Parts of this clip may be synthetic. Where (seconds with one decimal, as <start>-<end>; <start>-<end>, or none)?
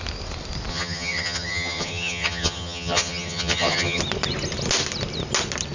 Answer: 0.7-4.0